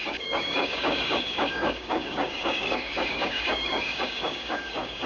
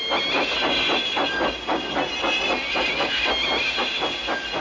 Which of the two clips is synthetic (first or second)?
first